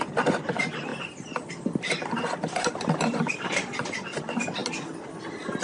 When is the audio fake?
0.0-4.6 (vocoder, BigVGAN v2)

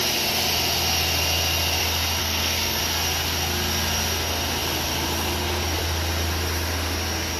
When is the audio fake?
2.2-2.8 (codec, SNAC)